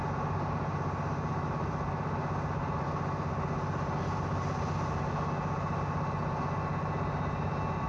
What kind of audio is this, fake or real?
real